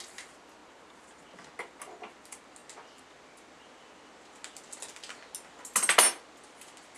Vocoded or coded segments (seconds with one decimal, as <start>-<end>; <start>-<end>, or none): none